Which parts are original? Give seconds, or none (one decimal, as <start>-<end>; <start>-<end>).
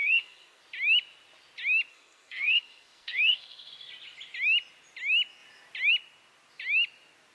0.6-1.9; 3.7-7.3